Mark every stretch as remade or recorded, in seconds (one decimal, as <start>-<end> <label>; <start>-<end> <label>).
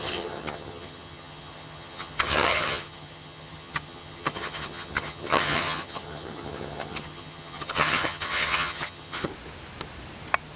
0.0-9.3 remade; 9.3-10.6 recorded